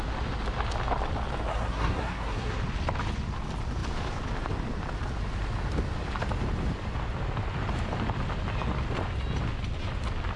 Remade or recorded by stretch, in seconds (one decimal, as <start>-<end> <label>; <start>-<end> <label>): 0.0-1.5 recorded; 1.5-2.6 remade; 2.6-10.4 recorded